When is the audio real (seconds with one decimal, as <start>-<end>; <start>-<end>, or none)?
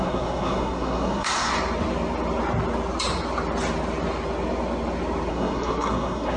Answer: 1.5-5.3